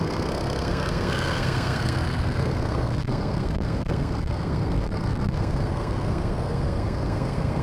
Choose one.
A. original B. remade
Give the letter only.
B